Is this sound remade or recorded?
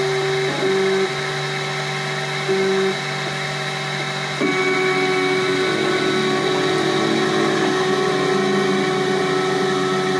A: recorded